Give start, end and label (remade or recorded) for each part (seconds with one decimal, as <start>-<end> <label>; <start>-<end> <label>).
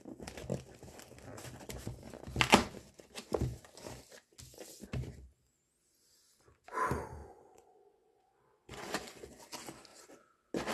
0.0-7.2 recorded; 7.2-9.3 remade; 9.3-10.7 recorded